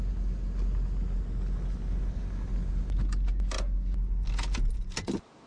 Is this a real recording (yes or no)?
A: yes